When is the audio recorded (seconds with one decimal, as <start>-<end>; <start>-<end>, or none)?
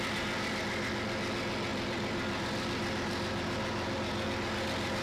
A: 0.0-1.7; 4.3-5.0